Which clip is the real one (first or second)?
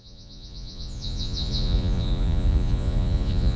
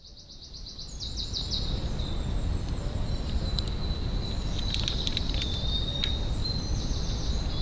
second